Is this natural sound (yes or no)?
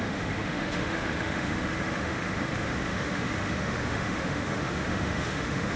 no